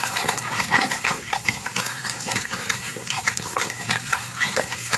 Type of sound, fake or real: fake